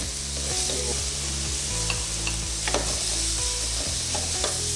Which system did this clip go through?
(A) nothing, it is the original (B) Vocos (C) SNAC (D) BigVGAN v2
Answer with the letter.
A